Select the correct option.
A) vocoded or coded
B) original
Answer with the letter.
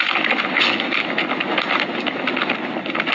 B